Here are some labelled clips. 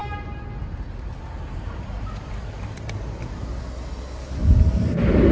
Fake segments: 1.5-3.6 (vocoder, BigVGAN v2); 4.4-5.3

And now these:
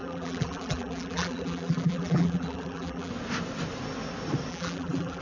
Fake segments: 0.0-3.1 (vocoder, BigVGAN v2); 4.5-5.2